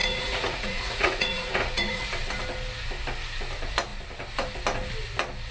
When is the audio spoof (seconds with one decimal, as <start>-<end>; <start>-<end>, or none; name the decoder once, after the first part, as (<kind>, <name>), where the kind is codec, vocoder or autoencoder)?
0.0-2.0 (vocoder, Vocos)